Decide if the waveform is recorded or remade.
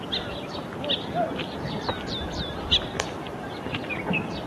recorded